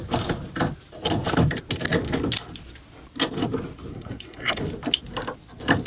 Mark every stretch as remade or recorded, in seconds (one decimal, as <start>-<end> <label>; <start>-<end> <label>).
0.0-3.9 recorded; 3.9-4.6 remade; 4.6-5.9 recorded